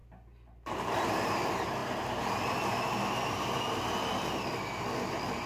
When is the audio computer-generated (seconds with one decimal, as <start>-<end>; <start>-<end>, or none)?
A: none